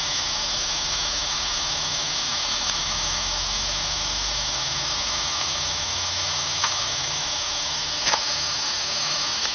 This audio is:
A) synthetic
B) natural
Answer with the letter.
A